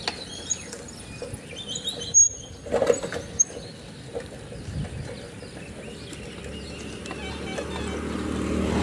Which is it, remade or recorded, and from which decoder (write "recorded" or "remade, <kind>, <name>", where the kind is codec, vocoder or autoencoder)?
recorded